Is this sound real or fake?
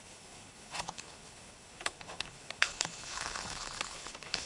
fake